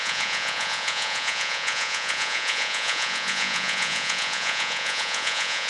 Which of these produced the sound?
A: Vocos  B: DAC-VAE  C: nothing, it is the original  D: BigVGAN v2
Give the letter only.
A